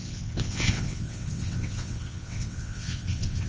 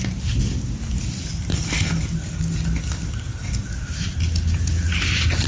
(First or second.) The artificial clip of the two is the first